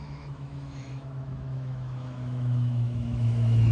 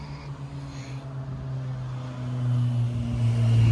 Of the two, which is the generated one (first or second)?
first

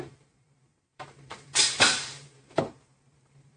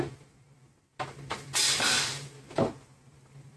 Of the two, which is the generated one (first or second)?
first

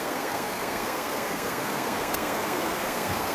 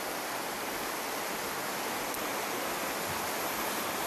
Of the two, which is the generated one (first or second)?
first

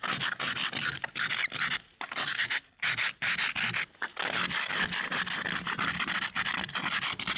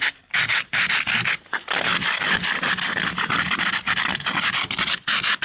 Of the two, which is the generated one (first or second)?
second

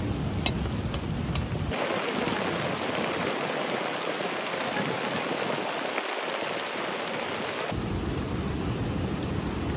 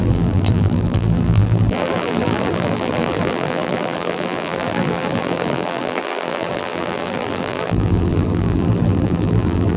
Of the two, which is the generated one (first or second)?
second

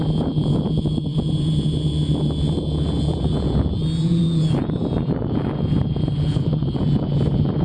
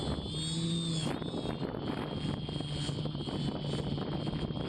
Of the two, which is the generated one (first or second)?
first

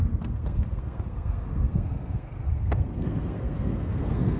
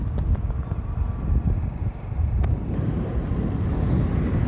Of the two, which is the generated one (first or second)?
first